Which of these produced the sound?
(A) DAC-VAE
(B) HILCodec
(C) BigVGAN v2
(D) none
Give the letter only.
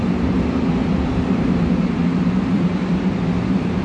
C